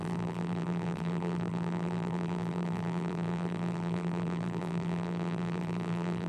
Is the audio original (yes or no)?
no